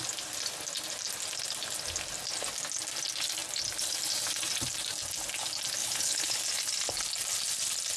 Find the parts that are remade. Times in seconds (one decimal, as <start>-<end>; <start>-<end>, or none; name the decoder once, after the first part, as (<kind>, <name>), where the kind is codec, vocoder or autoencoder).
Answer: 5.8-6.4 (codec, HILCodec)